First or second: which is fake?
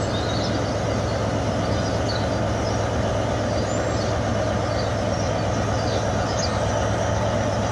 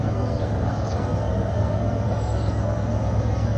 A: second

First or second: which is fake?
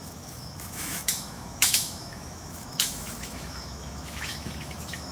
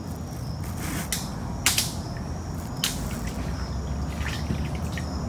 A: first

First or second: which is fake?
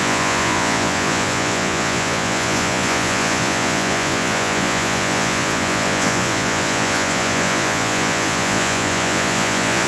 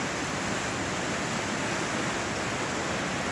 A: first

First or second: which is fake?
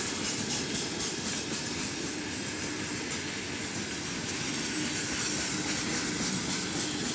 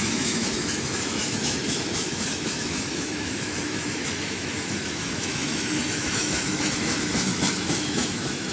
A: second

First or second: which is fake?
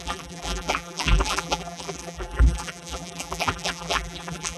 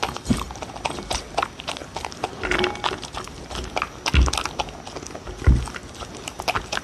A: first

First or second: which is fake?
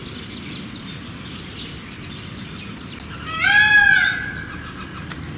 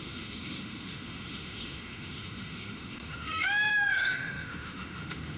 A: second